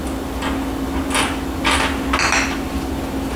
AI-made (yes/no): no